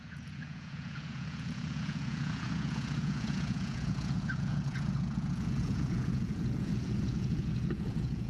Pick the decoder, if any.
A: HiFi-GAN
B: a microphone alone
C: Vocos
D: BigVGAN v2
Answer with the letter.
C